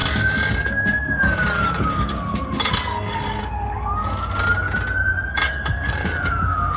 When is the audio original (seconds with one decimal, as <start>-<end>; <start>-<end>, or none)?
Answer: 0.0-0.5; 4.0-5.3